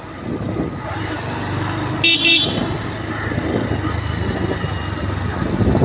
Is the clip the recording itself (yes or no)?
yes